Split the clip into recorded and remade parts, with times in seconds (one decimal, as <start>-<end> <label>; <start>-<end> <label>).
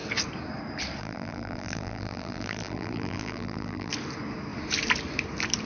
0.0-1.0 recorded; 1.0-3.9 remade; 3.9-5.7 recorded